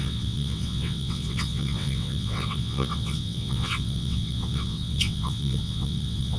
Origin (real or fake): fake